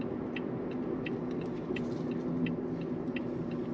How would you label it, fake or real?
real